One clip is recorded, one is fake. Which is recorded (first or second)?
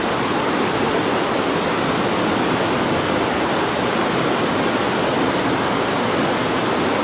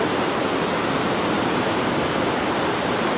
first